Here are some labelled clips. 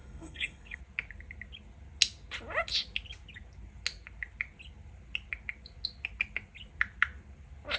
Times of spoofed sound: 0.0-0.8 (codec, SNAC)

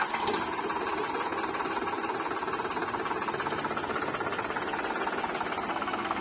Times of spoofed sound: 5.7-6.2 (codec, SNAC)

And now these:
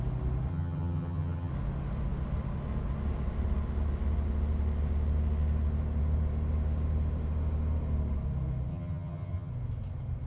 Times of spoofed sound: 0.5-1.5 (vocoder, HiFi-GAN); 8.7-9.5

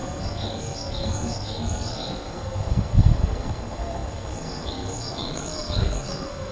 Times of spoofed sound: 0.0-6.5 (codec, SNAC)

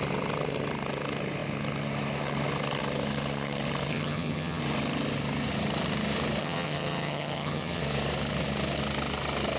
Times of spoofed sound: 3.9-4.6 (vocoder, HiFi-GAN); 6.4-7.8

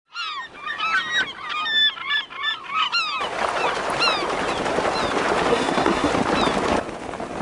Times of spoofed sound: 5.5-6.1 (codec, SNAC)

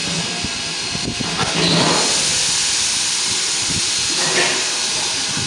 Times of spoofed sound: none

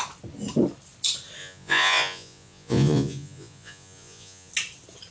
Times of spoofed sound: 1.4-4.5 (vocoder, Vocos)